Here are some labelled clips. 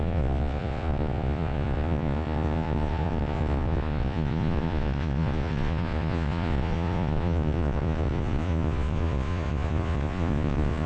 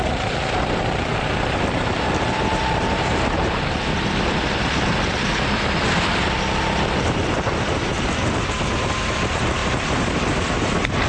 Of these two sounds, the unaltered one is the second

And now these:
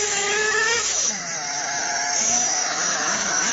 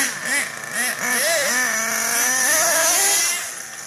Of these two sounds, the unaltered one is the second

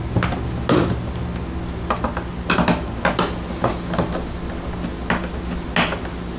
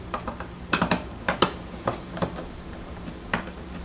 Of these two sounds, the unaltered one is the first